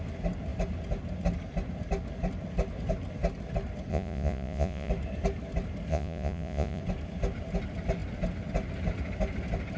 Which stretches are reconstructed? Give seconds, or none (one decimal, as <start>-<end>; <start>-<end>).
3.9-4.9; 5.9-6.8

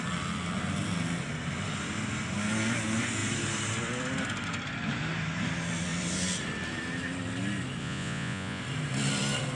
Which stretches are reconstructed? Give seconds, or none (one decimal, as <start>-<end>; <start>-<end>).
7.8-8.6

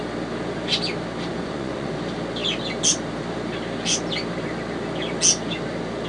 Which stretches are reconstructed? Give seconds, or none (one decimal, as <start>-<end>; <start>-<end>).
1.3-1.9

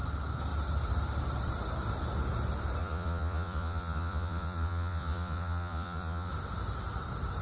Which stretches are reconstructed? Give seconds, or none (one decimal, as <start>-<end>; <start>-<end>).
2.8-6.3